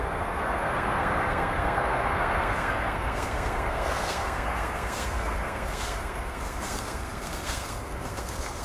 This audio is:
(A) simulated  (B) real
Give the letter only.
A